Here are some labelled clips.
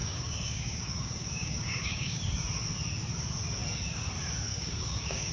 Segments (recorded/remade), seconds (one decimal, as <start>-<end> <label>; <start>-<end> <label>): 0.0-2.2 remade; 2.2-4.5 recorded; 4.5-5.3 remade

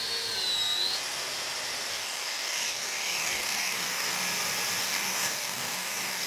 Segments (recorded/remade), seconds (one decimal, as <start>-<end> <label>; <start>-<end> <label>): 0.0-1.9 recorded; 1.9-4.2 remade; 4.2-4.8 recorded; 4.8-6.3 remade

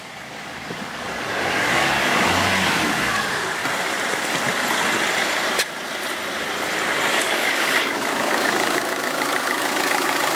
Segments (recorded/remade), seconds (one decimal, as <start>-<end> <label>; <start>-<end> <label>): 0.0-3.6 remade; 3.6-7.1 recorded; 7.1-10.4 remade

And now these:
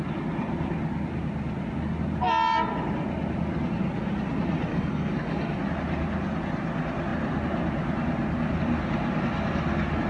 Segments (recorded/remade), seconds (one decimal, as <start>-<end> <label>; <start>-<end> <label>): 0.0-4.7 recorded; 4.7-5.6 remade; 5.6-10.1 recorded